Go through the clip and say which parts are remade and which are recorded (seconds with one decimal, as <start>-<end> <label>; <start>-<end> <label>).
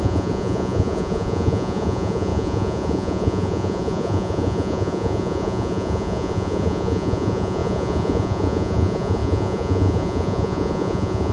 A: 0.0-11.3 remade